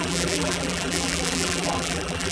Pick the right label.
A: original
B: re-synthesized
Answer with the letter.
B